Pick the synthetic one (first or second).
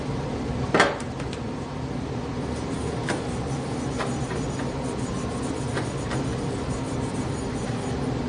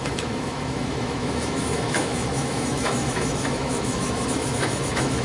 second